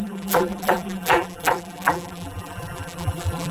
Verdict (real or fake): fake